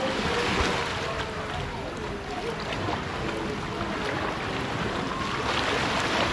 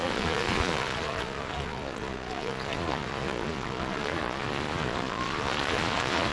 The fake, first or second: second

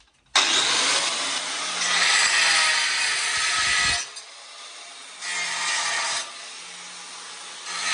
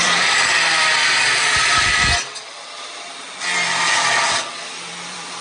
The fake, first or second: second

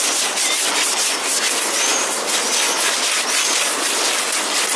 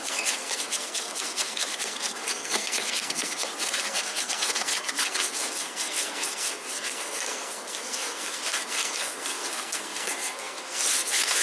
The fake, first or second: second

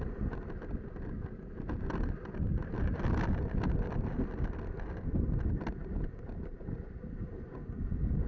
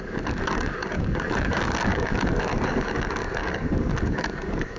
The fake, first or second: second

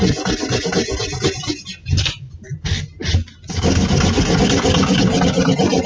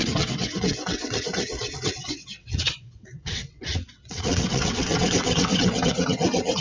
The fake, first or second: second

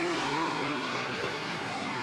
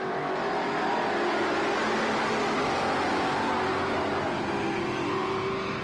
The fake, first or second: first